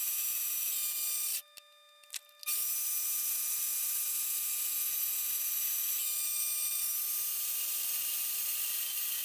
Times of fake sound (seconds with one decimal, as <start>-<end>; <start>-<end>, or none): 0.0-1.3; 2.5-9.2

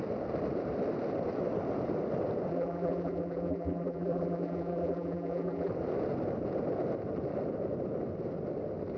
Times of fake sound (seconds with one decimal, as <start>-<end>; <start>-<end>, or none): 2.5-5.7

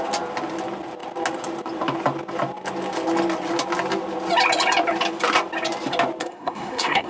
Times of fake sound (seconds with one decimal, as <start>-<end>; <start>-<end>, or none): 6.2-7.1

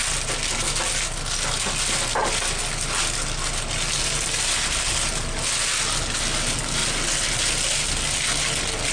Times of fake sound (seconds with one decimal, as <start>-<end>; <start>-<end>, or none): none

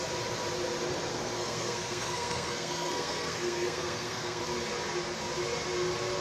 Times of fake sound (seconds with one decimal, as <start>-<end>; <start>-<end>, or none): 1.1-4.4